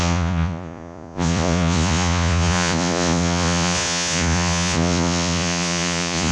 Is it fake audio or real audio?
fake